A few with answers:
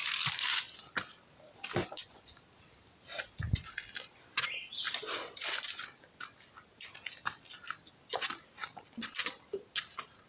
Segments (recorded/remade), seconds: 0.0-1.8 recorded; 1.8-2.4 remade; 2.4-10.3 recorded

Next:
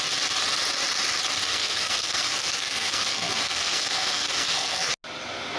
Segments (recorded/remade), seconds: 0.0-1.5 recorded; 1.5-4.9 remade; 4.9-5.6 recorded

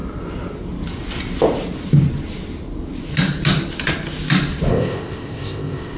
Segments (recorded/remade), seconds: 0.0-4.7 recorded; 4.7-6.0 remade

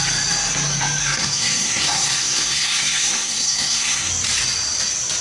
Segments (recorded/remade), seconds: 0.0-1.0 recorded; 1.0-4.1 remade; 4.1-5.2 recorded

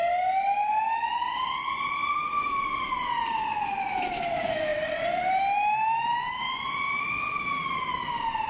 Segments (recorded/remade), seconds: 0.0-2.0 recorded; 2.0-3.1 remade; 3.1-4.7 recorded; 4.7-7.1 remade; 7.1-8.5 recorded

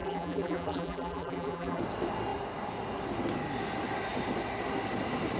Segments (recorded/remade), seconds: 0.0-1.8 remade; 1.8-5.4 recorded

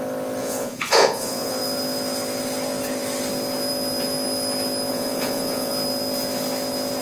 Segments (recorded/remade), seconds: 0.0-0.4 recorded; 0.4-1.5 remade; 1.5-4.9 recorded; 4.9-5.7 remade; 5.7-7.0 recorded